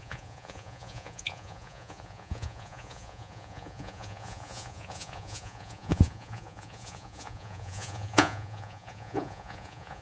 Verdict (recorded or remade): remade